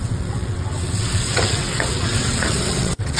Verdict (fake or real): fake